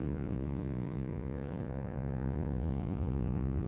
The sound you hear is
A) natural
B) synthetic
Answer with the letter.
B